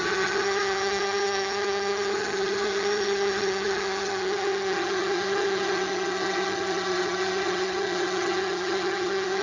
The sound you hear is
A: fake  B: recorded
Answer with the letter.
A